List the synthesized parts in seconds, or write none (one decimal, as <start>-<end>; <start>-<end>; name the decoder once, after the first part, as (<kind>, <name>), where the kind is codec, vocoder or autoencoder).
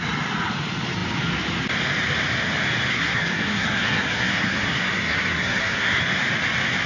2.9-6.0 (codec, SNAC)